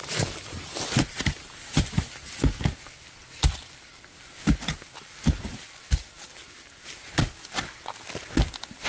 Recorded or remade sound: recorded